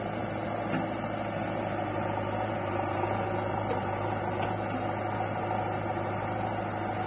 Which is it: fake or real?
real